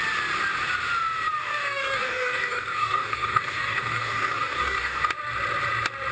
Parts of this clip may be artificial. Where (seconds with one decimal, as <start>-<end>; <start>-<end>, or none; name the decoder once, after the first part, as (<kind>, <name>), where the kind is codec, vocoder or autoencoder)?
1.4-5.1 (codec, DAC)